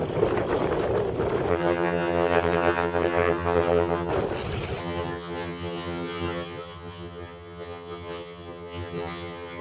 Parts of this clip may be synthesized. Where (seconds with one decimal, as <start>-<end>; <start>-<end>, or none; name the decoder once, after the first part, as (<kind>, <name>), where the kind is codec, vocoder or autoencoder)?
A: 1.5-4.1 (vocoder, HiFi-GAN); 4.8-9.6